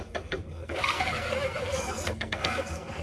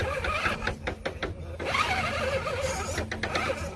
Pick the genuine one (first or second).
second